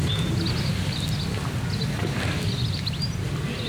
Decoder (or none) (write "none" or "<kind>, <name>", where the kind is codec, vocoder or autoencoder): none